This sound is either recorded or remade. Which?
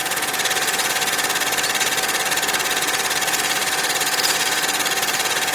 remade